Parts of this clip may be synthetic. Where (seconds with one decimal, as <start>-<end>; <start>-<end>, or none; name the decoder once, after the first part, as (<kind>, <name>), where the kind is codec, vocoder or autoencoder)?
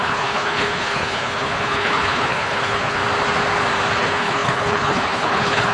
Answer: 0.0-3.0 (codec, HILCodec); 4.0-5.7